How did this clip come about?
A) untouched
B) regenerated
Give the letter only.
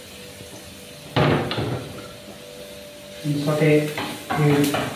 A